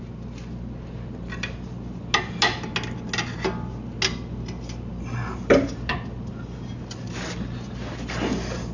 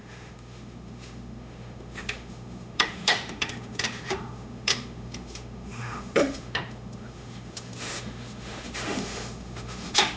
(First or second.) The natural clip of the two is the first